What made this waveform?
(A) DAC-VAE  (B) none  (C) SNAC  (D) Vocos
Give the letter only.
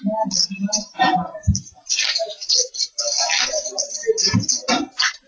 B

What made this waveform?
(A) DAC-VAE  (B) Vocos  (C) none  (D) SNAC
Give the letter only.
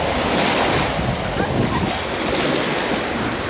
C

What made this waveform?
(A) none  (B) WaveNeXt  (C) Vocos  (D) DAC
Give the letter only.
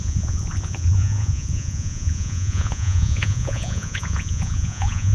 C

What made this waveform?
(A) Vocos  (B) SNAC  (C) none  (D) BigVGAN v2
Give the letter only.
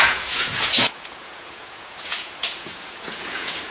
A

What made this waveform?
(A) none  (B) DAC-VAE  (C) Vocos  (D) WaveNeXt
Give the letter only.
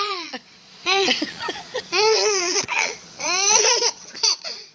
C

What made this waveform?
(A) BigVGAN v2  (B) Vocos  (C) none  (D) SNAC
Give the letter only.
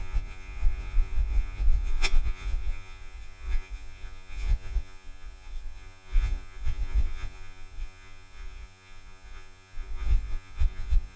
B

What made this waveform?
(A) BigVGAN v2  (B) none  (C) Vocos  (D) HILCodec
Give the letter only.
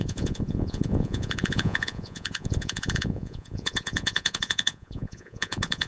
C